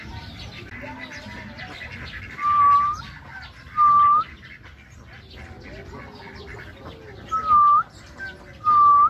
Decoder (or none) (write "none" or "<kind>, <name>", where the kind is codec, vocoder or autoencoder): none